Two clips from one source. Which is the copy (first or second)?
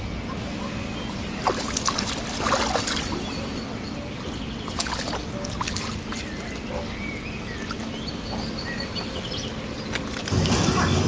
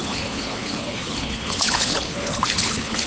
second